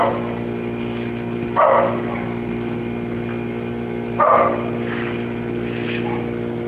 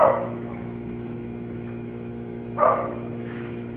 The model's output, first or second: second